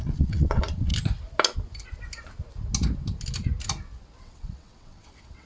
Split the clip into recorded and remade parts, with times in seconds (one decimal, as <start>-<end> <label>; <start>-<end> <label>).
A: 0.0-0.9 remade; 0.9-4.2 recorded; 4.2-5.5 remade

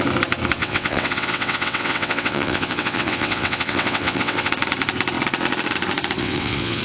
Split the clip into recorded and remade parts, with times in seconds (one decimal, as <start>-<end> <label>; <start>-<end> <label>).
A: 0.0-0.6 recorded; 0.6-4.5 remade; 4.5-6.2 recorded; 6.2-6.8 remade